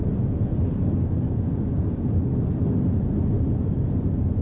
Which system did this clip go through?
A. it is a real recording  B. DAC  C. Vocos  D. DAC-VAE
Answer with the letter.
A